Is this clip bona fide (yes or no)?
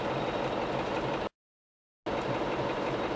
yes